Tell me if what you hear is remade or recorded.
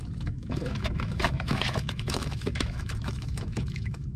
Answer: remade